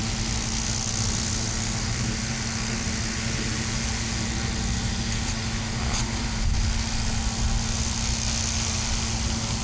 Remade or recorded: recorded